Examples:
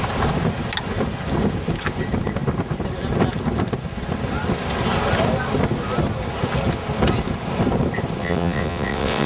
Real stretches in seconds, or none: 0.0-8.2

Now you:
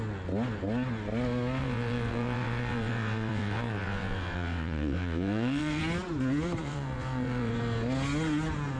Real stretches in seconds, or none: 0.0-1.6; 5.8-6.6; 7.5-8.8